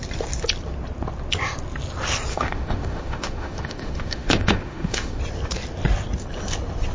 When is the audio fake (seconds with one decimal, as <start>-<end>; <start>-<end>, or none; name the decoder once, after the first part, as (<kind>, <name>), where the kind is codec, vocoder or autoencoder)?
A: 2.3-5.2 (autoencoder, DAC-VAE)